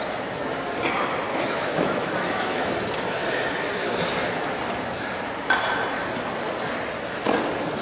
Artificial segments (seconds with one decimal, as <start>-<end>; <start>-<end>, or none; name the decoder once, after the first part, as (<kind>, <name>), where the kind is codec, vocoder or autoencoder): 1.3-2.6 (autoencoder, DAC-VAE)